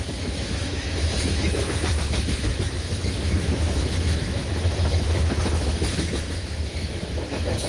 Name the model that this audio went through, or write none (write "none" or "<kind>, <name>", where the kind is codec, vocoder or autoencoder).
autoencoder, DAC-VAE